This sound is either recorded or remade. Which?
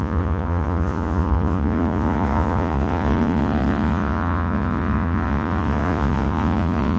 remade